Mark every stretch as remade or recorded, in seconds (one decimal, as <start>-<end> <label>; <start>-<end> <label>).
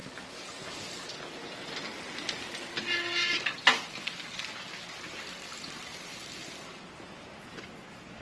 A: 0.0-8.2 recorded